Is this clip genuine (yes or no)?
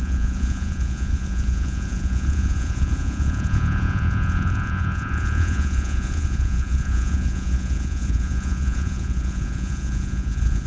no